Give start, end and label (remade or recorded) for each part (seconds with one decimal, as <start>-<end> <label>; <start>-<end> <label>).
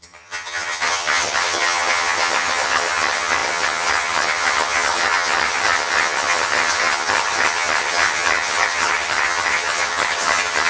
0.0-10.7 remade